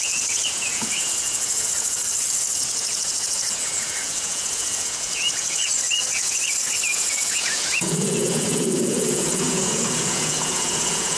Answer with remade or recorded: remade